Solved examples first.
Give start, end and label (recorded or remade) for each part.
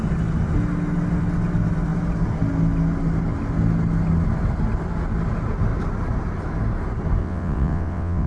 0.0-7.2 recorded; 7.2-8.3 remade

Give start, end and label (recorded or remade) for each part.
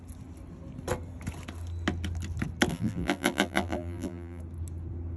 0.0-2.7 recorded; 2.7-4.4 remade; 4.4-5.2 recorded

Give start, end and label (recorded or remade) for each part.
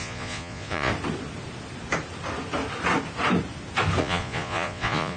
0.0-0.9 remade; 0.9-4.0 recorded; 4.0-5.2 remade